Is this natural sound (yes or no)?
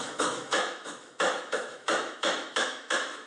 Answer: no